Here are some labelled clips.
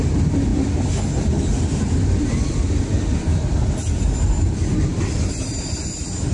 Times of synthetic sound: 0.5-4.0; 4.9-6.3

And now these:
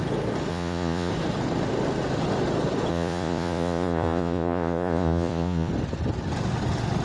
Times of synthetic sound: 0.5-1.1; 2.9-5.7

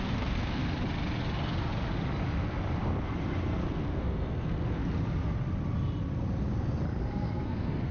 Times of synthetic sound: 0.0-0.6; 3.7-4.8; 7.0-7.9

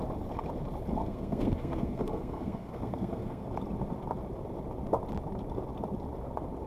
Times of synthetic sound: 1.0-3.5

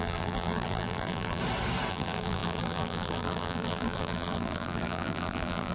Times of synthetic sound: 0.0-1.4; 1.9-5.7